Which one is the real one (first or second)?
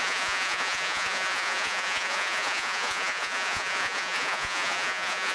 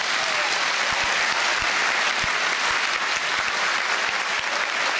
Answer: second